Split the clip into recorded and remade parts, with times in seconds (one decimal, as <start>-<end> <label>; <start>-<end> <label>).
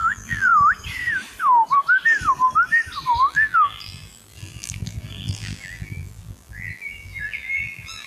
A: 0.0-0.5 remade; 0.5-3.3 recorded; 3.3-8.1 remade